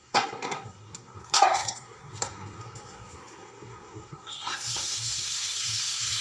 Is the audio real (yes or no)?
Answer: no